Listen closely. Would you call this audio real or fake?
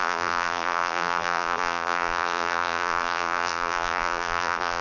fake